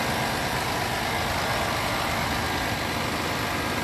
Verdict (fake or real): real